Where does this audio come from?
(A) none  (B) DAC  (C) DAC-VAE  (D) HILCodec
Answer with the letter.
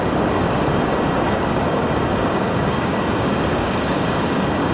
B